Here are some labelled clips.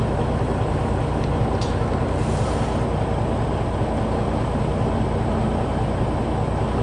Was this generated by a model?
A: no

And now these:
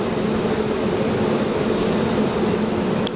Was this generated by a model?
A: no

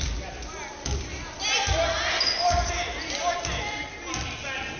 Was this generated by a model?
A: no